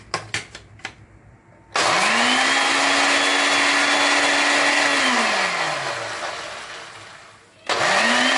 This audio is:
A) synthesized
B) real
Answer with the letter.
B